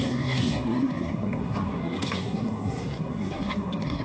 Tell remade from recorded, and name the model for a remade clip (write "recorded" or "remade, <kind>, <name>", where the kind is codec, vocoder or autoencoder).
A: remade, codec, SNAC